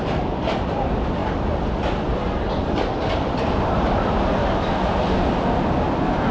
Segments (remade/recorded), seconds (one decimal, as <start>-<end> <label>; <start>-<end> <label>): 0.0-0.5 recorded; 0.5-1.2 remade; 1.2-2.5 recorded; 2.5-4.4 remade; 4.4-6.3 recorded